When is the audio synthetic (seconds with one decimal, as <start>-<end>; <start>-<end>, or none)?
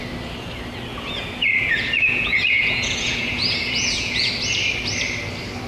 0.9-4.3